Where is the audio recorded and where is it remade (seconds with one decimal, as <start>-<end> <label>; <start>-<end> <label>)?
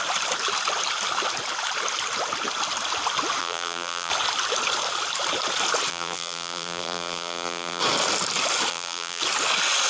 0.0-3.4 recorded; 3.4-4.1 remade; 4.1-5.9 recorded; 5.9-7.8 remade; 7.8-8.7 recorded; 8.7-9.2 remade; 9.2-9.9 recorded